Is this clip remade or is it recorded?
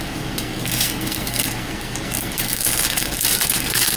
remade